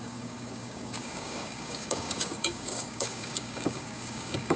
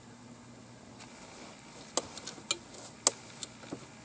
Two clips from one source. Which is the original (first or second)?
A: second